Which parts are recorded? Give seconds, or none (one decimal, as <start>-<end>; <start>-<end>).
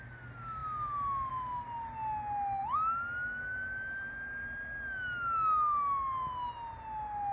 0.0-7.3